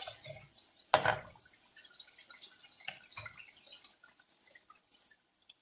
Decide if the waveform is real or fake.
real